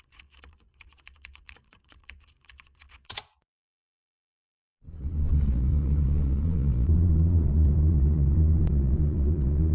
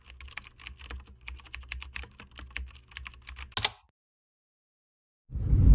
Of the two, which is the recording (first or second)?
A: second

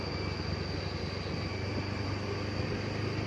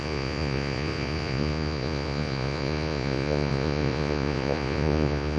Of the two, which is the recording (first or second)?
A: first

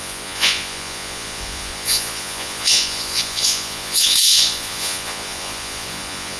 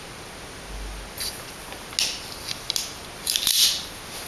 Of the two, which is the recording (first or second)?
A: second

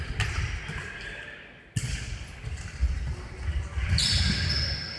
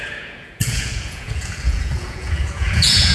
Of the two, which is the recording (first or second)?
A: first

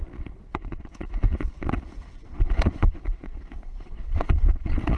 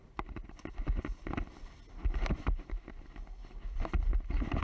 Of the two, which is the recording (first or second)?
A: second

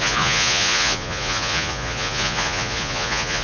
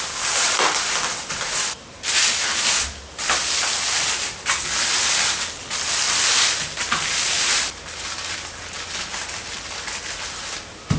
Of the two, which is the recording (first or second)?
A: second